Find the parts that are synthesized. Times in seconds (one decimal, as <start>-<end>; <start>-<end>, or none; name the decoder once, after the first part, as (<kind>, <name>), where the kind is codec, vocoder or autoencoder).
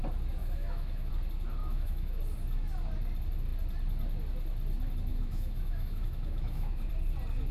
0.4-1.1 (autoencoder, DAC-VAE); 1.6-2.2; 5.1-6.9